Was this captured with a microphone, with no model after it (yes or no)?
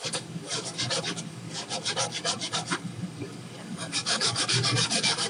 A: no